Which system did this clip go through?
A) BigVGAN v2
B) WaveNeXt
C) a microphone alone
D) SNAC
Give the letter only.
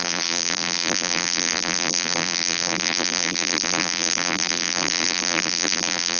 A